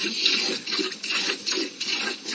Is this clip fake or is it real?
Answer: fake